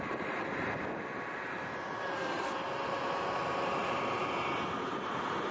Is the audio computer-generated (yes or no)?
no